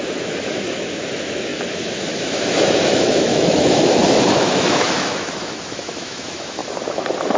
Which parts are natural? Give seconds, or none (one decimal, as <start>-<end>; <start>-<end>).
6.6-7.4